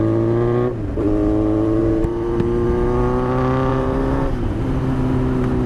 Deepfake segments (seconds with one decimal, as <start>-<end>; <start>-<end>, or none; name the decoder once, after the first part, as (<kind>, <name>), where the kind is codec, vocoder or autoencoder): 1.8-2.3 (vocoder, BigVGAN v2); 3.7-4.6